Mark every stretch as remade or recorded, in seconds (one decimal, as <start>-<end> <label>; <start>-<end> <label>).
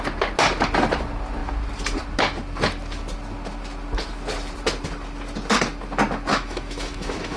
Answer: 0.0-6.3 recorded; 6.3-7.4 remade